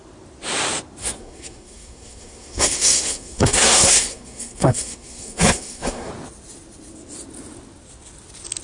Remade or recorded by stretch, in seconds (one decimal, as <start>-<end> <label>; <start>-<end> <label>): 0.0-1.0 recorded; 1.0-6.1 remade; 6.1-8.6 recorded